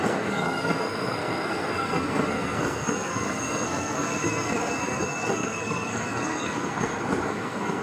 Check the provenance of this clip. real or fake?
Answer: fake